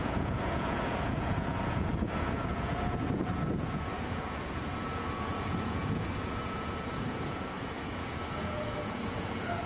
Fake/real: fake